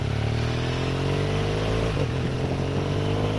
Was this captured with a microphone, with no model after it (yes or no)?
yes